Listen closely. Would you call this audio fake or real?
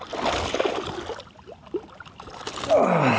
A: real